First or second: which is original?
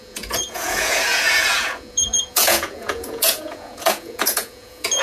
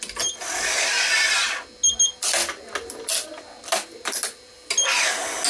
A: second